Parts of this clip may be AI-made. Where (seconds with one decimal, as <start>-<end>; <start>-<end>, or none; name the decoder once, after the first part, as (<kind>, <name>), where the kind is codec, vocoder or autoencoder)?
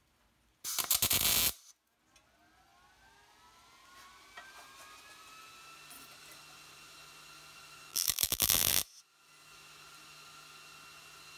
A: 7.9-8.8 (vocoder, BigVGAN v2)